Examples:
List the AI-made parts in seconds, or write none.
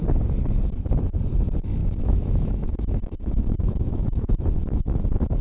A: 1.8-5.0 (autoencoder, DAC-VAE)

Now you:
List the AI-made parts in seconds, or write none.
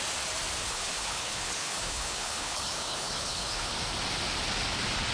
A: 0.6-3.7 (codec, HILCodec)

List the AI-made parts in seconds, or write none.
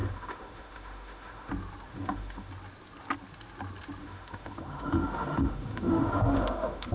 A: 0.0-1.5 (autoencoder, DAC-VAE); 1.9-2.5; 4.0-6.9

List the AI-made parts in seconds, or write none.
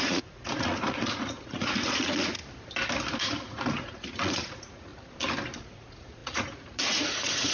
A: 0.0-2.4 (vocoder, Vocos); 3.2-4.9; 5.6-7.5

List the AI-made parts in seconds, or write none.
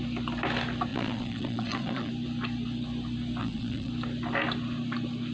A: 0.9-2.1 (vocoder, Vocos); 3.4-3.9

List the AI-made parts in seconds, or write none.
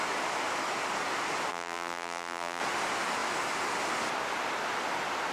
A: 1.5-2.6 (vocoder, BigVGAN v2)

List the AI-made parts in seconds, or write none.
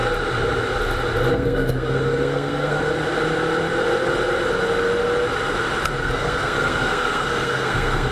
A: 1.3-2.9 (codec, SNAC); 6.0-8.1